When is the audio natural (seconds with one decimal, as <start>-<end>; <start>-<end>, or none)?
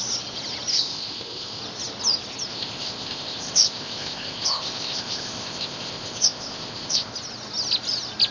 0.0-0.7; 1.6-2.5; 7.1-8.3